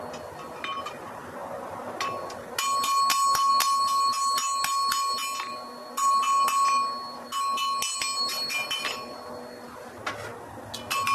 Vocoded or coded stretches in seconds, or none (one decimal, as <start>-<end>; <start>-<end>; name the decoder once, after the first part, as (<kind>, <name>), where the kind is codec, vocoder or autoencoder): none